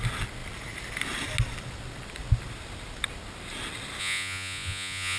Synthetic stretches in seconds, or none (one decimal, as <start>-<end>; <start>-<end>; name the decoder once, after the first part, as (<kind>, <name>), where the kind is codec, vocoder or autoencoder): 4.0-5.2 (vocoder, Vocos)